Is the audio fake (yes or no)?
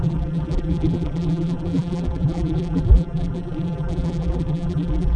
yes